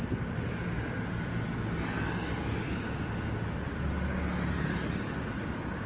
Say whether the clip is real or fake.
real